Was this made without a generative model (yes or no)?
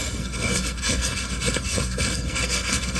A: no